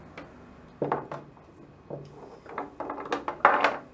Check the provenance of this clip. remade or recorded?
recorded